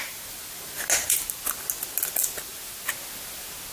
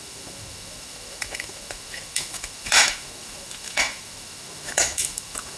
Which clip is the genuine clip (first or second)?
first